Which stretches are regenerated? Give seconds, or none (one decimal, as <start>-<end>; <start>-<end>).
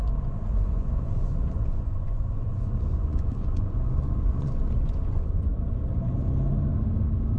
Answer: 0.0-5.5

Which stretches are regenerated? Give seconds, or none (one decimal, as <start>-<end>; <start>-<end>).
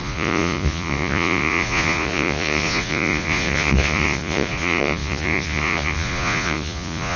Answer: 0.0-7.2